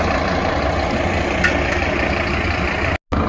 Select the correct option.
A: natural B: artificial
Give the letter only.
A